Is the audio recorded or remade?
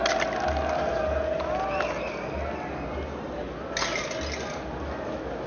recorded